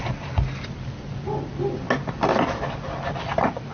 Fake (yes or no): no